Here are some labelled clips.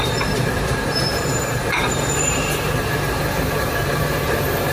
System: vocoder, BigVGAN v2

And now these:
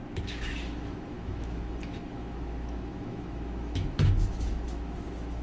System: autoencoder, DAC-VAE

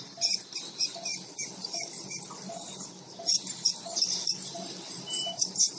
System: none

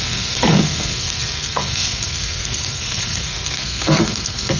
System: codec, SNAC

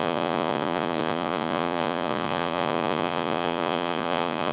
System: vocoder, Vocos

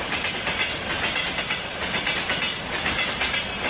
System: none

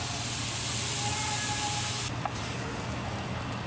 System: none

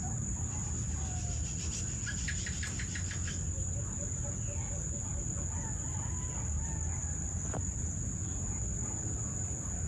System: none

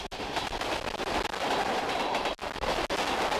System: none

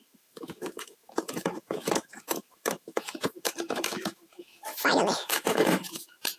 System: autoencoder, DAC-VAE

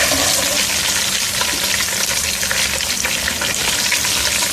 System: none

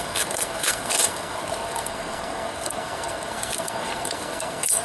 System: codec, SNAC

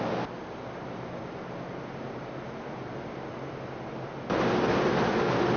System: none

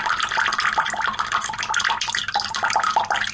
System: none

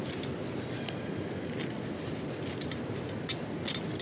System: none